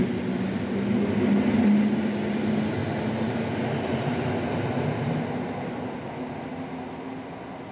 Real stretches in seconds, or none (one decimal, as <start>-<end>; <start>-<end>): 0.0-7.7